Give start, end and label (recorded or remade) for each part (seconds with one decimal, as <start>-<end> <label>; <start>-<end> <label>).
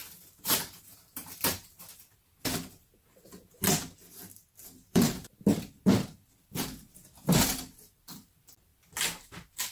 0.0-1.8 remade; 1.8-4.6 recorded; 4.6-5.3 remade; 5.3-9.7 recorded